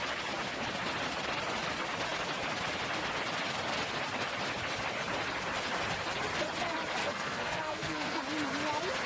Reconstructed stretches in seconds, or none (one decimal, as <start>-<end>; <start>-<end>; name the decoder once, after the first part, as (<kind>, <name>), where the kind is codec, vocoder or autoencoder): 7.0-8.2 (codec, SNAC)